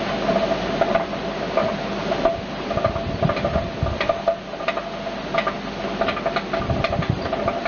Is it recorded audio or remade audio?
recorded